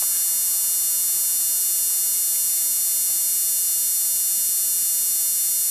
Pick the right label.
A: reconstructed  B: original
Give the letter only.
B